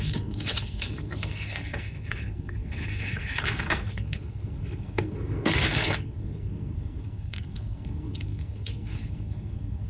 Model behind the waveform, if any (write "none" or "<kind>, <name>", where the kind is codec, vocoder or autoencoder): codec, SNAC